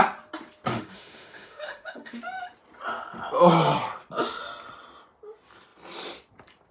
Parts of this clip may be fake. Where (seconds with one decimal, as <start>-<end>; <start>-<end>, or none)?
0.7-2.2